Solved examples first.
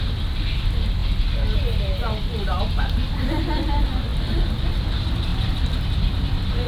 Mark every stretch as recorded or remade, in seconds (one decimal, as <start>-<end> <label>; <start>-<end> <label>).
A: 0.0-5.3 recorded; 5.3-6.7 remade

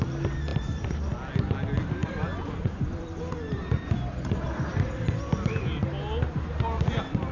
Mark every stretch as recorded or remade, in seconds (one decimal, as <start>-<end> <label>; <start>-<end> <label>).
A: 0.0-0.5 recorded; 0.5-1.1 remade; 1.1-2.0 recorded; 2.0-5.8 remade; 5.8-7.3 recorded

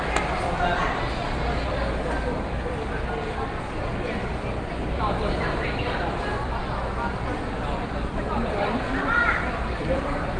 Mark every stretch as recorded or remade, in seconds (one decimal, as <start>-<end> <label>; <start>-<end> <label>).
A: 0.0-1.2 remade; 1.2-2.4 recorded; 2.4-6.6 remade; 6.6-7.1 recorded; 7.1-10.4 remade

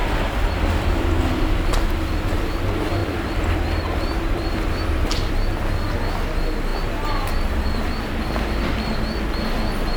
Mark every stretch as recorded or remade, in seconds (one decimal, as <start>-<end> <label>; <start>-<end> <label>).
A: 0.0-1.3 remade; 1.3-3.0 recorded; 3.0-5.3 remade; 5.3-10.0 recorded

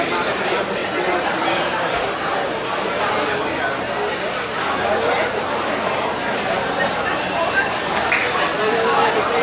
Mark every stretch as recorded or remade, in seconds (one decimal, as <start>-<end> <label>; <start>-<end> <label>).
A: 0.0-0.8 remade; 0.8-5.3 recorded; 5.3-8.2 remade; 8.2-9.4 recorded